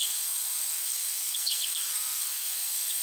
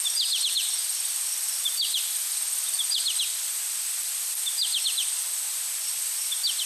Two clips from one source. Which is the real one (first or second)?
second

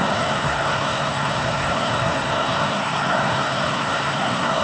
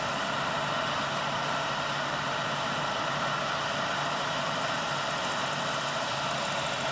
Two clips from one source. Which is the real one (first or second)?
second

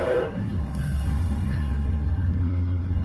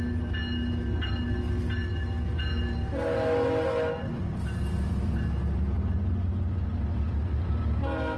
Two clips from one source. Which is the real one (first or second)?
second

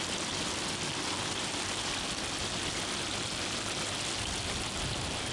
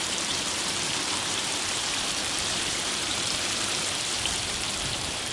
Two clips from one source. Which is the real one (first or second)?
first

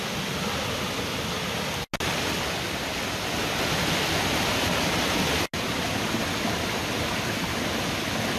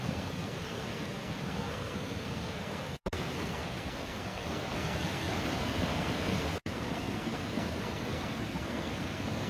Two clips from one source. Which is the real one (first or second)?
first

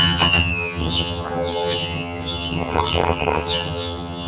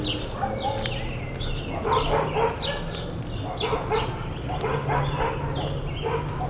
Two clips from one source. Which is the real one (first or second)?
second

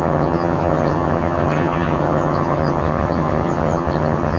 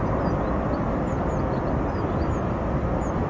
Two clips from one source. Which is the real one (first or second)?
second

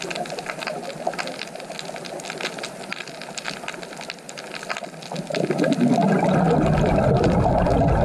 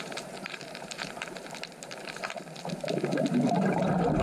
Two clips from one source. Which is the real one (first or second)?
first